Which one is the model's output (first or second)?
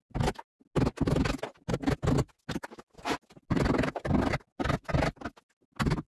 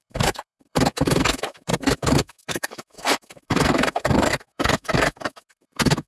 second